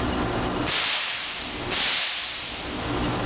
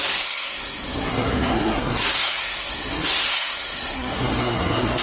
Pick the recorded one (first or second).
first